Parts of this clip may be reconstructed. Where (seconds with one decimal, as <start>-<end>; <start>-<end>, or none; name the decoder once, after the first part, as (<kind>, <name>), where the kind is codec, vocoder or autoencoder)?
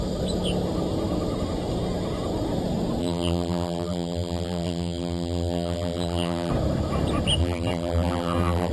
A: 3.0-6.5 (vocoder, BigVGAN v2); 7.4-8.7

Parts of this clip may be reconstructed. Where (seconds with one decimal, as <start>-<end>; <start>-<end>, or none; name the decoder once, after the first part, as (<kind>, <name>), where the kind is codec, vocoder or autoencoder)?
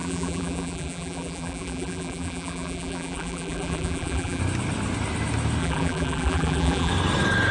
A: 0.0-4.4 (vocoder, BigVGAN v2); 5.6-6.9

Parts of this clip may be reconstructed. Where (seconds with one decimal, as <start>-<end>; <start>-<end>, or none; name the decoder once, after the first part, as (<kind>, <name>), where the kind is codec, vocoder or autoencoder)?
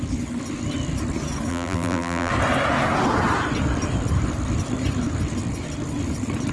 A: 1.5-2.3 (vocoder, BigVGAN v2)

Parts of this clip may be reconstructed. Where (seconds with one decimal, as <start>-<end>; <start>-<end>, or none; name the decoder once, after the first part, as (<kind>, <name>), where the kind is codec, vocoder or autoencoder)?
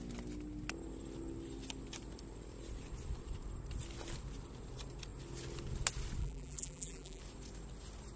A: 6.2-7.2 (vocoder, BigVGAN v2)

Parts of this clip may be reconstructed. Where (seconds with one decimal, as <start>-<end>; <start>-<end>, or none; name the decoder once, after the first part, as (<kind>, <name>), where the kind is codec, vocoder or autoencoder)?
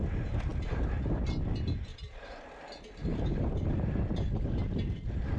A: 1.9-2.5 (vocoder, BigVGAN v2); 3.0-5.4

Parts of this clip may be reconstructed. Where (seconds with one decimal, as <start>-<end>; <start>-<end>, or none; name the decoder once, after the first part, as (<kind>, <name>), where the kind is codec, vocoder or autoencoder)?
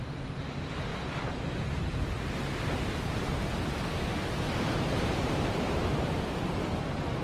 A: 0.0-0.9 (vocoder, BigVGAN v2); 2.7-3.5; 5.0-6.4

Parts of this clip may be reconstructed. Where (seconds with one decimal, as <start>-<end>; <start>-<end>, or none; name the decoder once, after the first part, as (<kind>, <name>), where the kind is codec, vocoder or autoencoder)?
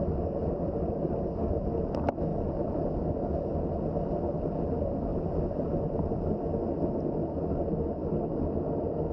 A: 5.1-5.7 (vocoder, BigVGAN v2)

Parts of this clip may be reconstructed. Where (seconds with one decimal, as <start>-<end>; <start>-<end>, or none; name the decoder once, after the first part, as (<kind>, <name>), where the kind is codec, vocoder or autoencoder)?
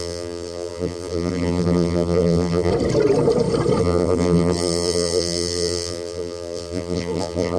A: 0.0-2.7 (vocoder, BigVGAN v2); 3.8-7.6